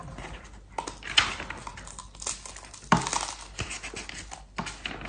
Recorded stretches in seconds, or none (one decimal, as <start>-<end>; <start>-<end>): 0.0-5.1